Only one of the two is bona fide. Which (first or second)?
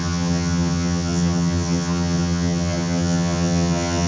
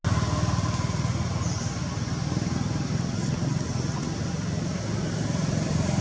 second